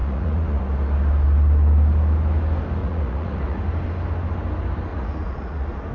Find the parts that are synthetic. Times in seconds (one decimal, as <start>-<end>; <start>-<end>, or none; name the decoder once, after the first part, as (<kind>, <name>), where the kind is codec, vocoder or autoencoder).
0.0-0.6 (vocoder, Vocos); 2.8-3.6; 4.9-5.9